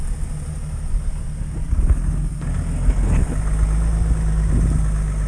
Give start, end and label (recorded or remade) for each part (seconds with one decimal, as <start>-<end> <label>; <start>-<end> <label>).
0.0-5.3 recorded